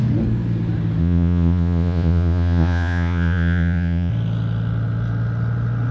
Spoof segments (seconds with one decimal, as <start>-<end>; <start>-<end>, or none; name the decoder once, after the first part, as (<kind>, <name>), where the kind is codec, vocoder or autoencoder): 1.0-4.1 (vocoder, Vocos)